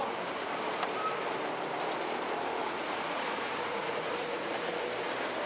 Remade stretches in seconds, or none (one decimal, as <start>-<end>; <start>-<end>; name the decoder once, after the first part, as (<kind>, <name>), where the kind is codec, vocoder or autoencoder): 2.6-4.7 (vocoder, Vocos)